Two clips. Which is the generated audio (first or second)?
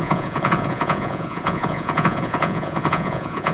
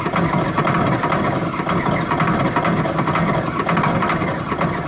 first